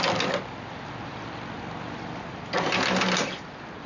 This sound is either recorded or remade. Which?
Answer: recorded